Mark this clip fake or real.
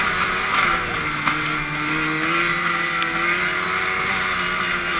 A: real